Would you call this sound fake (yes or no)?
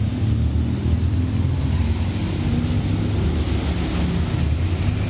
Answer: no